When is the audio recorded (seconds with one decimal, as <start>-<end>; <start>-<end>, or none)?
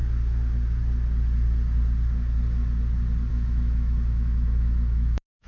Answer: 0.0-3.3